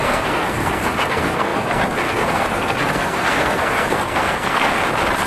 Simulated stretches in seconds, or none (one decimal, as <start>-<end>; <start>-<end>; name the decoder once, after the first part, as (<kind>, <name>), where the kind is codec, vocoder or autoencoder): 0.0-4.8 (codec, SNAC)